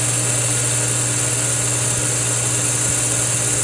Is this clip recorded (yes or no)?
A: yes